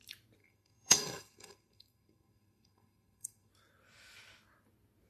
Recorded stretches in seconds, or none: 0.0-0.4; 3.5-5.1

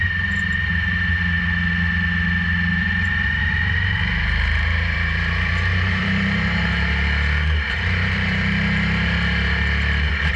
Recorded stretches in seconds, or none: 1.1-2.7

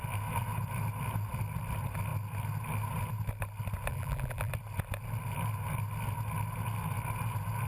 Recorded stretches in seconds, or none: 0.0-3.9; 4.5-7.7

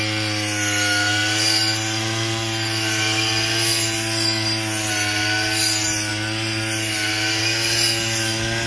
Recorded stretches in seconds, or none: 0.0-8.7

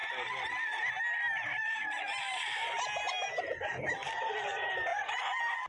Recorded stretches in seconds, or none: 0.0-5.7

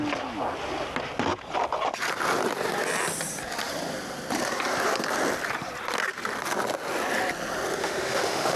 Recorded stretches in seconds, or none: 0.0-7.8

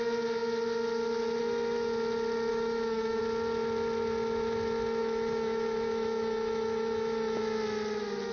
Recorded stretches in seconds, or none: 0.0-2.5; 3.2-5.0; 7.4-8.3